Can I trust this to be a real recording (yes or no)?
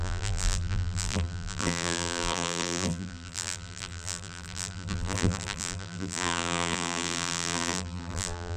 no